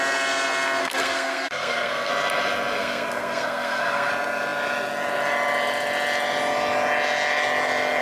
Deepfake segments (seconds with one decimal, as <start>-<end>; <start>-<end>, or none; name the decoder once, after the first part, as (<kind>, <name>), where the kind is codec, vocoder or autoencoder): 0.8-2.1 (codec, SNAC); 2.8-4.1